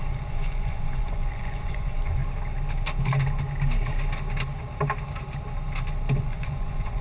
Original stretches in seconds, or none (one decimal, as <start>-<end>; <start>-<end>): 2.2-6.2